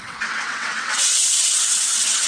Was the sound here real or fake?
fake